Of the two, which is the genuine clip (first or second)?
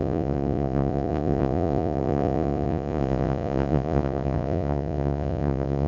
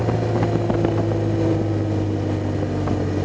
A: second